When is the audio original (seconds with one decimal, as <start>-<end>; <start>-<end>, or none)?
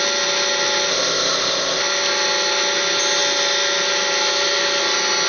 0.0-0.9; 1.8-5.3